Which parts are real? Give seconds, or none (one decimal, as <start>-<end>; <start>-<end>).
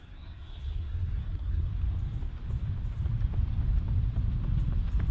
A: 1.7-5.1